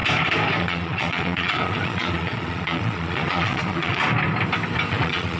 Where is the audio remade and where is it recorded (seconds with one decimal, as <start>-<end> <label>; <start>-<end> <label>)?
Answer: 0.0-0.6 recorded; 0.6-4.0 remade; 4.0-4.9 recorded; 4.9-5.4 remade